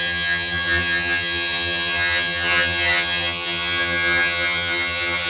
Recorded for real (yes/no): no